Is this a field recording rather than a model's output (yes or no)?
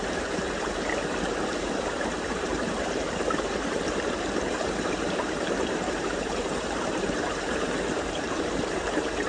no